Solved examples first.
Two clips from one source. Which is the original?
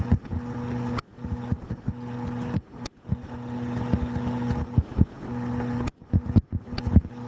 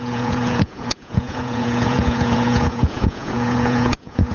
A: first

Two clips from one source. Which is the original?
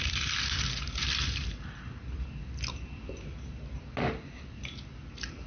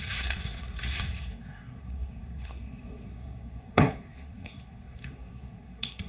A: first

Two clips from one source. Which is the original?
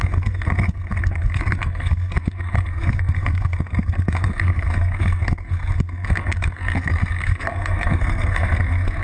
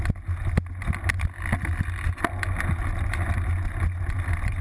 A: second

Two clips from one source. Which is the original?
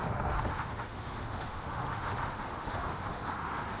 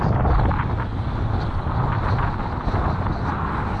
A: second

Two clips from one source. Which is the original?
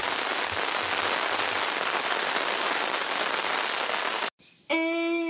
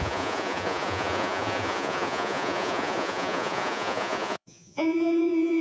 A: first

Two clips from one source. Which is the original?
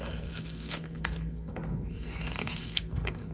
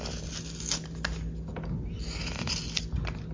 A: second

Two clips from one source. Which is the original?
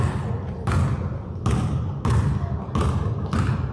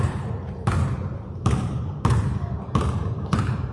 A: first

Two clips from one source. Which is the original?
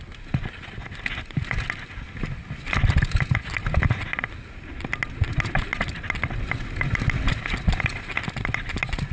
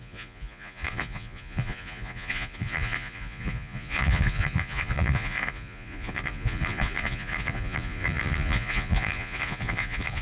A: first